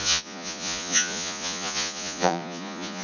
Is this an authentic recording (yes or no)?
no